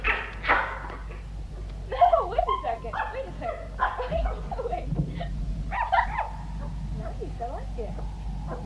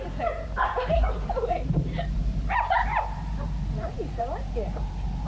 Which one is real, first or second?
first